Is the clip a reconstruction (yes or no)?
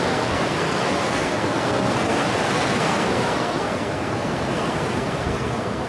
yes